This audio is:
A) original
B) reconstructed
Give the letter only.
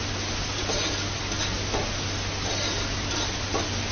A